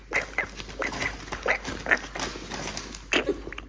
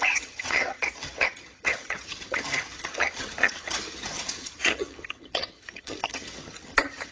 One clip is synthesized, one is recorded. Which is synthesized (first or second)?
second